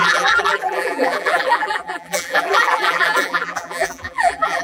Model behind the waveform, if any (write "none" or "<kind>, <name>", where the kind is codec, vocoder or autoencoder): vocoder, BigVGAN v2